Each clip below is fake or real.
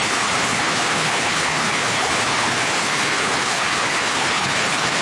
fake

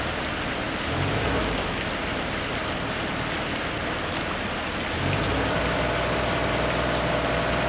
real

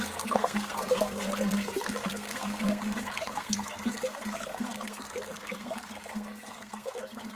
fake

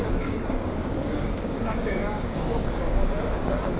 fake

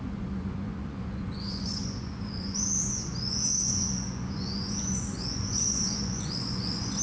fake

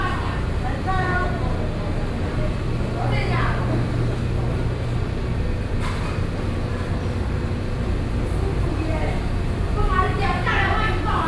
real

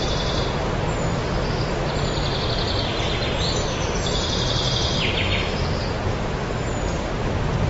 real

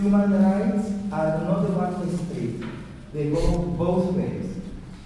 real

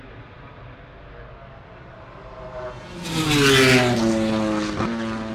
real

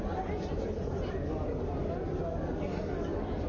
real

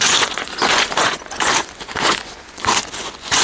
fake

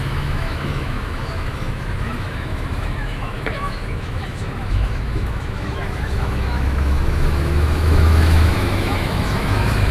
fake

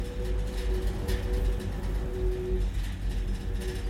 real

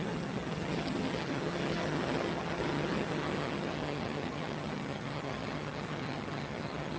fake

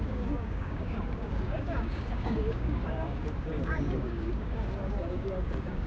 fake